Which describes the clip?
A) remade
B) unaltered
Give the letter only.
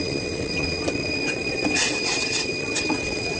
A